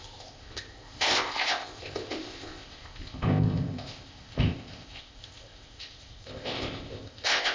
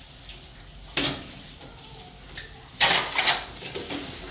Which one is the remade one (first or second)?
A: first